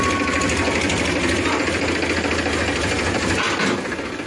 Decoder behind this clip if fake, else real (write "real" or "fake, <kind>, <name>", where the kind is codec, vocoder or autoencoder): real